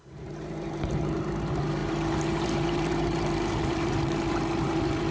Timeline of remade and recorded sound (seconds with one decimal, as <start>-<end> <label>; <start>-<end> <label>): 0.0-5.1 remade